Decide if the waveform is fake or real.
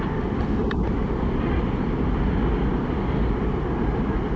real